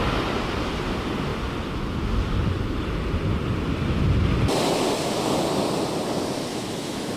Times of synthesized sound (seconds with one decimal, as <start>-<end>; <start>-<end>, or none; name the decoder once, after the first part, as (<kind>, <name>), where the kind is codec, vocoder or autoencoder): 6.5-7.2 (autoencoder, DAC-VAE)